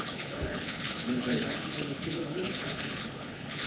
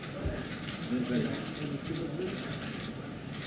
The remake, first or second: first